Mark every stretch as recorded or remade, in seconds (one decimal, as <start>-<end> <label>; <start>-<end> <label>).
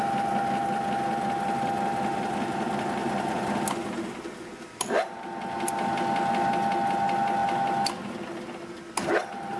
0.0-9.6 recorded